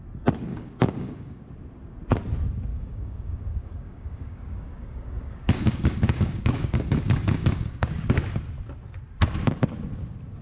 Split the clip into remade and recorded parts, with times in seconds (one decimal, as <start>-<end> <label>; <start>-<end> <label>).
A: 0.0-0.5 recorded; 0.5-1.4 remade; 1.4-2.7 recorded; 2.7-7.9 remade; 7.9-10.4 recorded